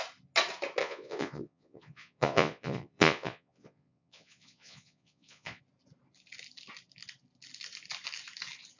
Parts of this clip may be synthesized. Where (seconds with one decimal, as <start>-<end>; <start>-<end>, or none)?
0.8-5.6